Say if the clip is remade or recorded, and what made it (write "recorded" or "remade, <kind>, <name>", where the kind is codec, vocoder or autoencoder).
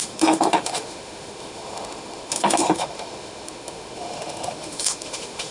remade, autoencoder, DAC-VAE